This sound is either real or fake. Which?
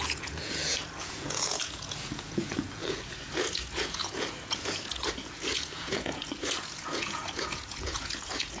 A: fake